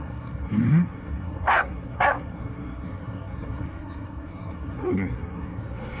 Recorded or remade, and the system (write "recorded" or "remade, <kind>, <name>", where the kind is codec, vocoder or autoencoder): remade, codec, SNAC